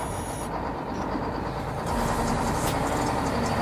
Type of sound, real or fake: fake